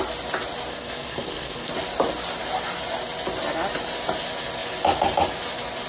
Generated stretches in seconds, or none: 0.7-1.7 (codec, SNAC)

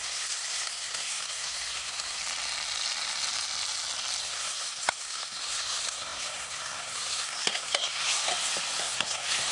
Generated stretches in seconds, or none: 0.0-2.2 (codec, SNAC); 4.2-8.3; 8.8-9.5

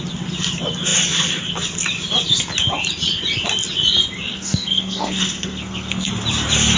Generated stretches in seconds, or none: 4.3-6.1 (codec, SNAC)

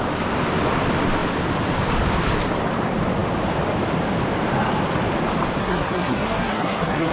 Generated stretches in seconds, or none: 5.6-7.1 (codec, SNAC)

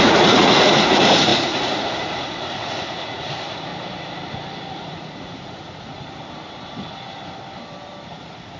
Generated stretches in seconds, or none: 0.0-3.7 (vocoder, Vocos); 4.7-6.0; 8.1-8.6

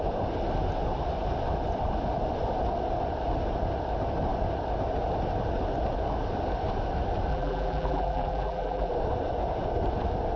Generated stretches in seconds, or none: 7.3-8.9 (vocoder, BigVGAN v2)

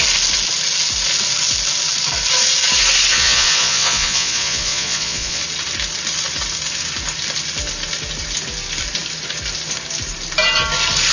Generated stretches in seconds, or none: 3.1-5.4 (vocoder, Vocos)